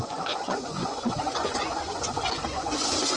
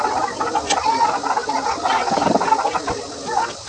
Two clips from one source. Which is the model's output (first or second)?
first